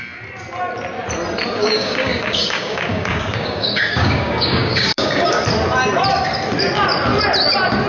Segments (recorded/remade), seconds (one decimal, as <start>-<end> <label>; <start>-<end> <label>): 0.0-1.6 recorded; 1.6-5.4 remade; 5.4-7.9 recorded